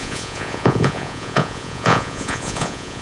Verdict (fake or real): fake